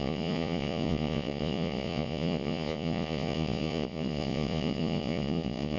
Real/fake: fake